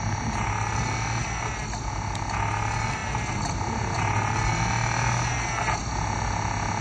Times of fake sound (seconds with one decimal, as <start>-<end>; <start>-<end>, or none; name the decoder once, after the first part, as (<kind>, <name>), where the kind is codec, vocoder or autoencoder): none